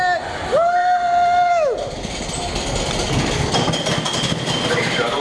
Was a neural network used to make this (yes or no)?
no